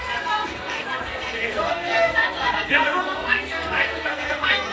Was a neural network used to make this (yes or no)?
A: yes